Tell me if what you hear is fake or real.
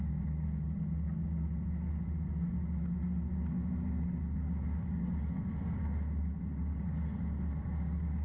real